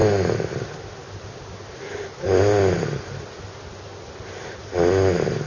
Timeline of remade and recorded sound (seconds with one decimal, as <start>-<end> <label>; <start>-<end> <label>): 0.0-5.5 recorded